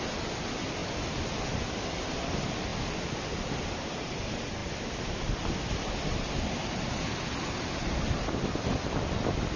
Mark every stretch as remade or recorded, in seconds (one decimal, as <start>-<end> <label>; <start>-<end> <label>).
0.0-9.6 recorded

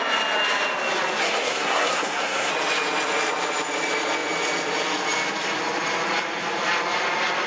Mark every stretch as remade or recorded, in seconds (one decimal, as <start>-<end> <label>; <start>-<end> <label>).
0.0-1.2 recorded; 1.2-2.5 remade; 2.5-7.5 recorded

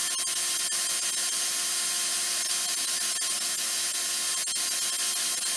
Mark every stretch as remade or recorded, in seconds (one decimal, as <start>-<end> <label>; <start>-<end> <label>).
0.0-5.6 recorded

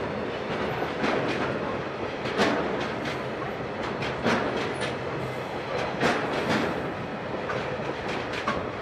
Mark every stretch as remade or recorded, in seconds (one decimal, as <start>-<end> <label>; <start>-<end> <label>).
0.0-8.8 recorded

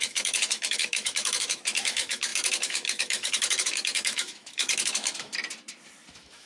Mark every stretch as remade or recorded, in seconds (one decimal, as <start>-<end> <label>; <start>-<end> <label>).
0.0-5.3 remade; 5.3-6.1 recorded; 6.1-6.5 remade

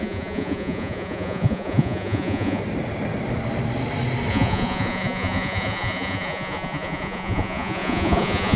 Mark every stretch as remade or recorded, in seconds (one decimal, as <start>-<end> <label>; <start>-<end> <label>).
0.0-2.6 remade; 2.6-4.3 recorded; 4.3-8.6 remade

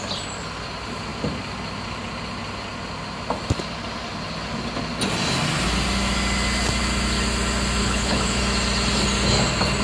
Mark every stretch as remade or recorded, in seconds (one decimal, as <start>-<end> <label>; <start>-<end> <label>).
0.0-7.8 recorded; 7.8-8.4 remade; 8.4-9.8 recorded

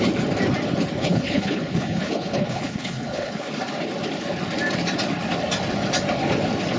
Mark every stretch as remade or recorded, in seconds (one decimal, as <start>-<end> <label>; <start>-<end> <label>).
0.0-1.0 recorded; 1.0-3.5 remade; 3.5-6.8 recorded